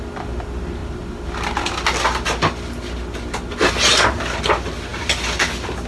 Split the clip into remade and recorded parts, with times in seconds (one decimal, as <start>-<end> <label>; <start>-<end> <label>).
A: 0.0-5.9 recorded